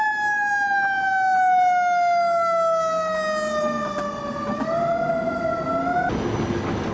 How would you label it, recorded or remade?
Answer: recorded